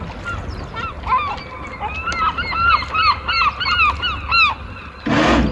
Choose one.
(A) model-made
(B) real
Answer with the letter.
B